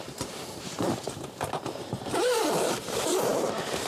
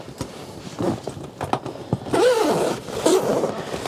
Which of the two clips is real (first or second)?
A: second